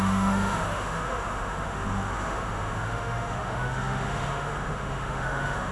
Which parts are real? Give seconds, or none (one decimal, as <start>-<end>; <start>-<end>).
none

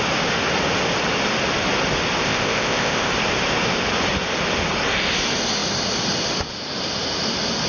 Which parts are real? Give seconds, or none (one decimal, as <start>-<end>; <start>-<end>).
0.0-2.2; 3.1-7.7

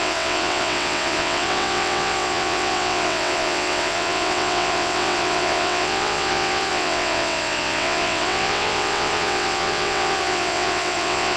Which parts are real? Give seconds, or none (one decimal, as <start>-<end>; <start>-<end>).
none

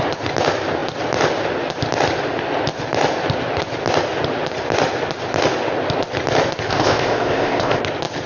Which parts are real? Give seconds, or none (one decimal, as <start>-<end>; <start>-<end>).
0.0-6.7; 7.8-8.3

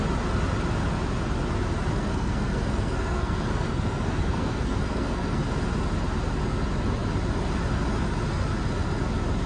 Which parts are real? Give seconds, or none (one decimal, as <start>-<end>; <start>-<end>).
0.0-1.9; 5.4-9.5